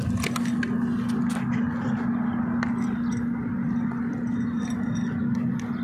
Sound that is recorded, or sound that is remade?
recorded